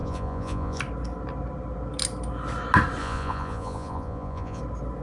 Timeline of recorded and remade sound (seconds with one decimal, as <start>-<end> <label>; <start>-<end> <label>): 0.0-0.8 remade; 0.8-3.0 recorded; 3.0-4.6 remade; 4.6-5.0 recorded